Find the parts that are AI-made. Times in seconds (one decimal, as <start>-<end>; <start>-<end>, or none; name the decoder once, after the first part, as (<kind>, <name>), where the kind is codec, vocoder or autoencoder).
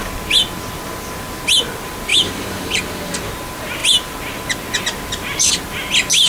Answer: 2.1-2.8 (vocoder, BigVGAN v2)